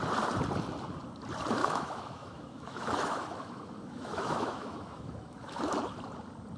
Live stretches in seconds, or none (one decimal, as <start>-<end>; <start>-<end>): 0.0-1.6; 5.6-6.6